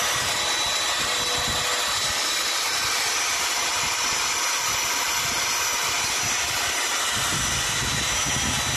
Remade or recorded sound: recorded